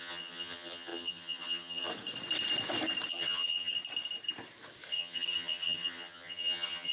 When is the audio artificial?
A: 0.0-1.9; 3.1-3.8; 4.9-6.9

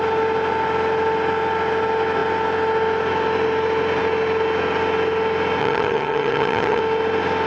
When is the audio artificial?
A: 5.6-6.8

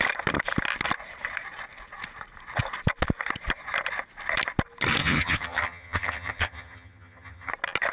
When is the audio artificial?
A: 5.0-7.5

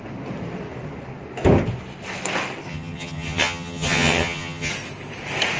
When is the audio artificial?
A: 2.7-4.7

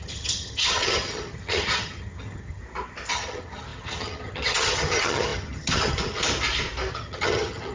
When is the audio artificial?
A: 0.0-2.6; 3.1-6.2; 6.9-7.7